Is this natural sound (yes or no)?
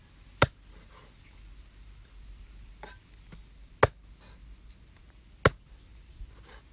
yes